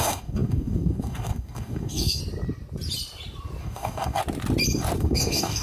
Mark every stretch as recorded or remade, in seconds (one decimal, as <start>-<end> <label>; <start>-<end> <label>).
0.0-2.2 remade; 2.2-3.6 recorded; 3.6-4.2 remade; 4.2-5.0 recorded; 5.0-5.6 remade